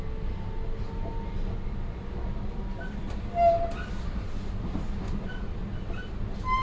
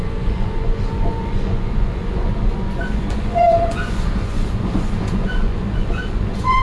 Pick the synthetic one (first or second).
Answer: second